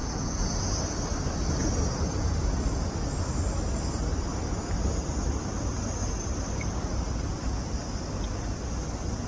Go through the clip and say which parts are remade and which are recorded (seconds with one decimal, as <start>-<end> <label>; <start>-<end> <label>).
0.0-0.7 remade; 0.7-9.3 recorded